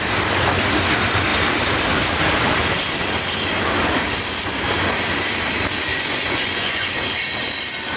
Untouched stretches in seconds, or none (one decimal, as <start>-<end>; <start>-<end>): 0.0-5.9; 6.9-8.0